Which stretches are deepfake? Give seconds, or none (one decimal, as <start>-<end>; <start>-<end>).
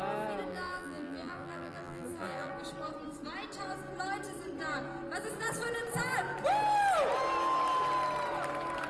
0.5-2.5